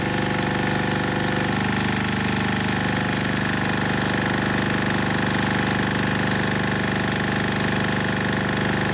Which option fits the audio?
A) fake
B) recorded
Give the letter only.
B